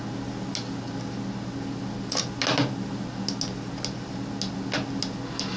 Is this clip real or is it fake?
real